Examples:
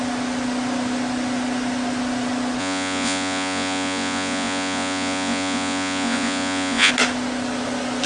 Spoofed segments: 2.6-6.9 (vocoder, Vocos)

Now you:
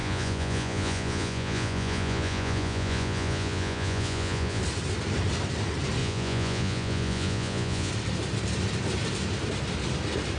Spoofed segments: 0.0-4.6 (vocoder, Vocos); 6.0-7.9

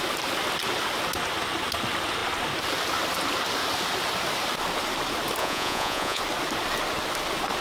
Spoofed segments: 5.4-6.2 (vocoder, Vocos)

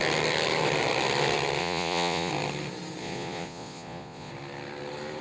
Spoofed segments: 1.6-2.3 (vocoder, Vocos); 3.0-4.3

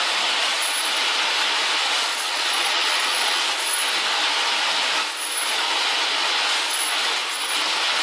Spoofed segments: 2.1-3.4 (vocoder, Vocos)

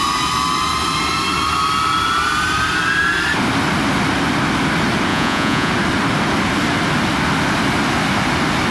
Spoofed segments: 5.1-5.7 (vocoder, Vocos)